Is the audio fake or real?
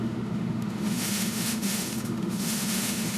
fake